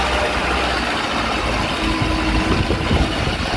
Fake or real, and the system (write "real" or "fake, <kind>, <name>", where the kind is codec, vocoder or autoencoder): real